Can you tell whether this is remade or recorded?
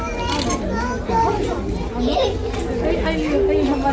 recorded